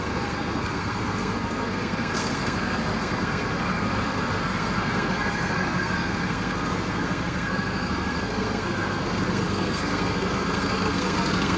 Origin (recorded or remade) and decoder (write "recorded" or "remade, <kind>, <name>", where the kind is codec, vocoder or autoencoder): remade, codec, SNAC